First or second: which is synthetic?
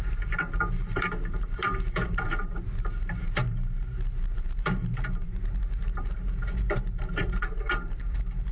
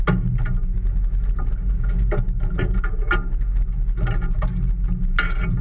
first